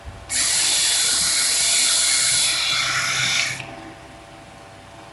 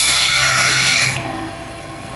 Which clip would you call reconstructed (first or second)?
second